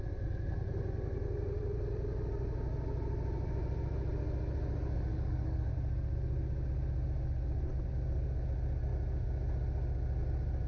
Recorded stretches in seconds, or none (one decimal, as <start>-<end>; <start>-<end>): 0.0-5.1; 5.7-10.7